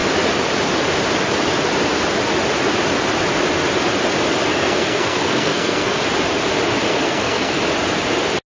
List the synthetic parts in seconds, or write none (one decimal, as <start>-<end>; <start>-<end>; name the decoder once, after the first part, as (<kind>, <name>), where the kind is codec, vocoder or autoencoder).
4.5-6.0 (codec, SNAC); 6.9-7.6